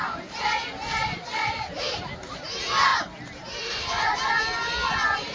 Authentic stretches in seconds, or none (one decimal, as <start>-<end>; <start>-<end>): 0.0-5.3